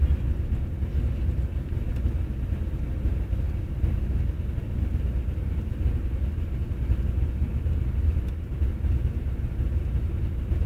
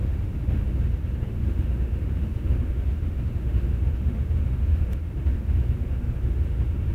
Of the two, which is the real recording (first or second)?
first